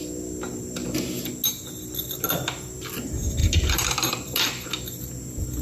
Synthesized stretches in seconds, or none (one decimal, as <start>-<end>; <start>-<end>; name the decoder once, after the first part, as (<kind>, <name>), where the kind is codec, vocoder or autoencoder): 3.4-5.0 (vocoder, BigVGAN v2)